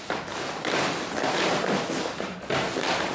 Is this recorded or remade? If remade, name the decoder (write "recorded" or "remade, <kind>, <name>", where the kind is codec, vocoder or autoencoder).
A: recorded